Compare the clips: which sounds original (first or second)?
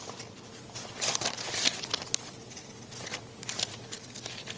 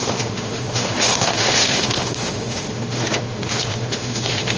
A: first